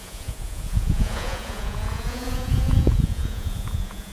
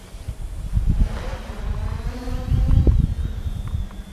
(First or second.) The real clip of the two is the second